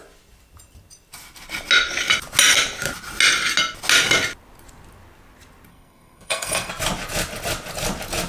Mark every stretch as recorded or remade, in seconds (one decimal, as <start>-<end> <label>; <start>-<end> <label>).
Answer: 0.0-5.7 recorded; 5.7-6.7 remade; 6.7-8.3 recorded